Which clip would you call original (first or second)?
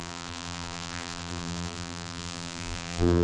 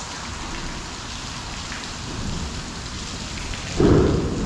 second